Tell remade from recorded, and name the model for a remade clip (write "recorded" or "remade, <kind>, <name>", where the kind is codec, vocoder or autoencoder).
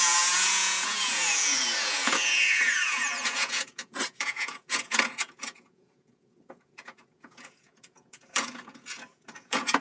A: remade, vocoder, Vocos